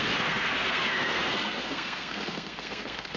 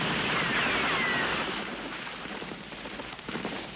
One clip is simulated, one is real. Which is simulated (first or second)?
first